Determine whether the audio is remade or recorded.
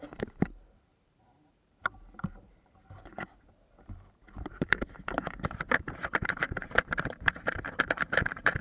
remade